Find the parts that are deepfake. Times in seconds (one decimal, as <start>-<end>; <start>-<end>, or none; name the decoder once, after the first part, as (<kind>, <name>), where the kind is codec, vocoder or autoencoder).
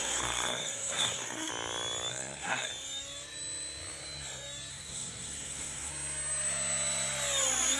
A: 0.0-1.5 (codec, SNAC); 2.1-2.7; 4.7-5.9